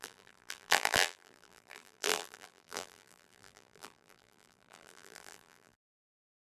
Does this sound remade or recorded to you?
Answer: remade